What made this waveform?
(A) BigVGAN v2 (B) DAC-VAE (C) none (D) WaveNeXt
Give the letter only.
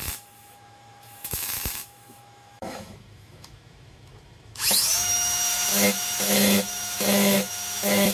B